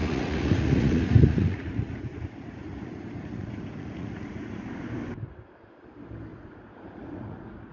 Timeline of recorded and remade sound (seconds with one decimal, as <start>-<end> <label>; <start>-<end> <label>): 0.0-4.6 remade; 4.6-6.3 recorded; 6.3-7.7 remade